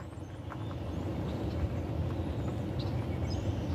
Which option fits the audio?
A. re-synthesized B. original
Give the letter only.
B